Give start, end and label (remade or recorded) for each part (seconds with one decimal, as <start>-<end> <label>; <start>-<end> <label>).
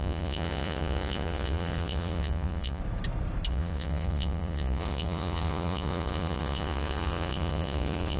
0.0-2.8 remade; 2.8-3.5 recorded; 3.5-8.2 remade